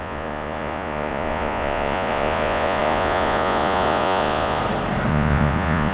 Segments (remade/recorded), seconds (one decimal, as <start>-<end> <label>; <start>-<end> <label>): 0.0-4.6 remade; 4.6-5.1 recorded; 5.1-5.9 remade